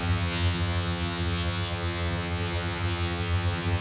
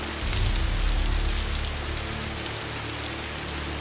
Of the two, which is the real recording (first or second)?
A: second